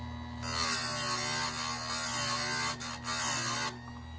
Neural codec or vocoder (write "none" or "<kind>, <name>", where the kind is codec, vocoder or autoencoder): none